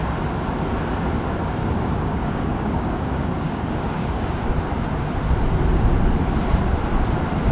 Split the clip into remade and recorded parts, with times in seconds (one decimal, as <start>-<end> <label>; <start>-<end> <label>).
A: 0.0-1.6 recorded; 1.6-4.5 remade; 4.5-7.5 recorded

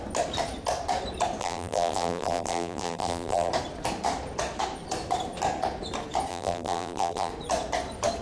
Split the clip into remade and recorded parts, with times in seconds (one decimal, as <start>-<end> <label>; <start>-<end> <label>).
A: 0.0-1.4 recorded; 1.4-3.5 remade; 3.5-6.3 recorded; 6.3-7.3 remade; 7.3-8.2 recorded

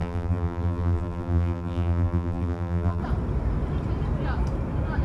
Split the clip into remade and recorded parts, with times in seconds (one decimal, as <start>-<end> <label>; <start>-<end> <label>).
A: 0.0-3.0 remade; 3.0-5.0 recorded